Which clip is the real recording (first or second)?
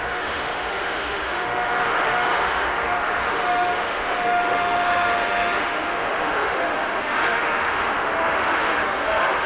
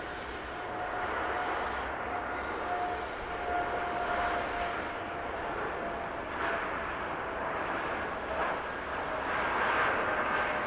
second